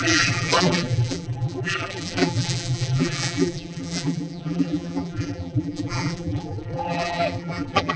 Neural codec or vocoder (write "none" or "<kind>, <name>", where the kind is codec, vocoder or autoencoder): vocoder, BigVGAN v2